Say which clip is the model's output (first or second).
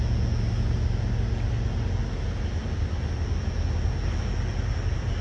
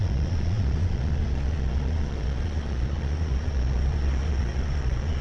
second